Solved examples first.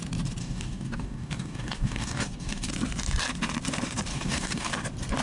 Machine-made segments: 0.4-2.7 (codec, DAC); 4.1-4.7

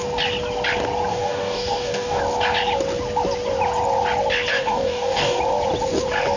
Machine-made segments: 1.1-2.2 (codec, DAC); 4.5-5.4

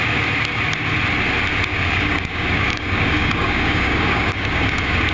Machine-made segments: 1.7-5.1 (codec, DAC)

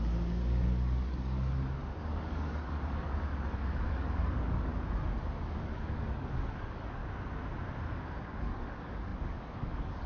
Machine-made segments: 0.0-4.7 (codec, DAC); 5.4-7.0; 8.2-10.1

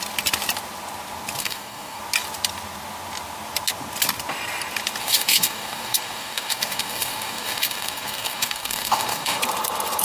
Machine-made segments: 1.4-2.0 (codec, DAC); 5.0-9.4

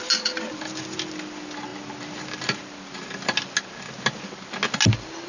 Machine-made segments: none

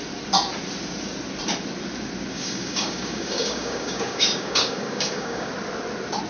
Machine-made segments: 2.3-5.5 (codec, DAC)

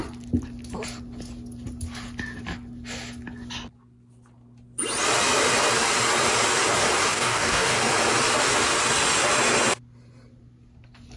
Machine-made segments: 7.1-7.8 (codec, DAC)